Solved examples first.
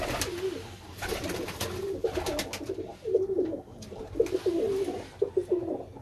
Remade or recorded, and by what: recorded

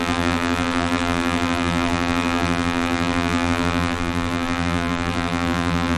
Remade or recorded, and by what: remade, vocoder, BigVGAN v2